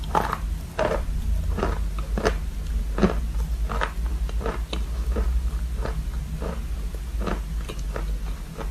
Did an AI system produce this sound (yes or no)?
no